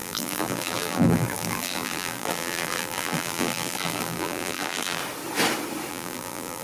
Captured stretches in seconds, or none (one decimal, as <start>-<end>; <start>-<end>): 5.0-5.9